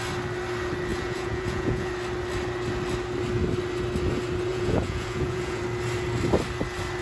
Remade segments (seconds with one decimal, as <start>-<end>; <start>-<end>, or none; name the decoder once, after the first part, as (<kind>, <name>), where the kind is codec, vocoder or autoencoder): 0.9-1.9 (vocoder, Vocos); 4.5-5.6